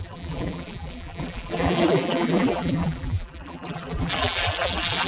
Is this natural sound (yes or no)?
no